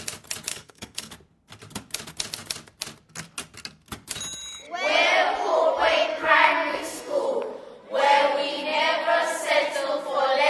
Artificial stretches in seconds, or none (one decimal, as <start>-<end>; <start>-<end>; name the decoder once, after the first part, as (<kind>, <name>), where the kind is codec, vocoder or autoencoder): 0.5-1.1 (codec, SNAC); 6.1-7.2